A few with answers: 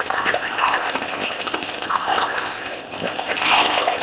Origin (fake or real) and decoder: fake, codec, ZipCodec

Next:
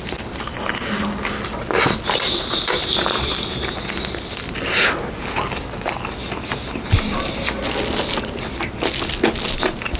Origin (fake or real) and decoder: real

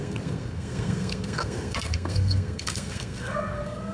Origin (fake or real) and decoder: fake, codec, SNAC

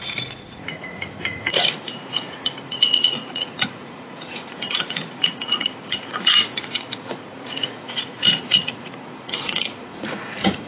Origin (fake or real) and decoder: fake, vocoder, Vocos